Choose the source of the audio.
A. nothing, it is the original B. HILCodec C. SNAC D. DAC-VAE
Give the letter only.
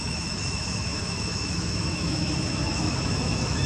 D